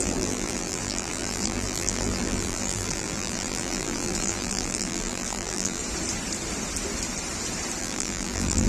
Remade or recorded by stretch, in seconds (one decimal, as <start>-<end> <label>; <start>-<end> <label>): 0.0-5.8 remade; 5.8-7.8 recorded; 7.8-8.7 remade